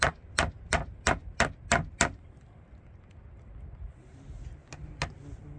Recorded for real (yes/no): yes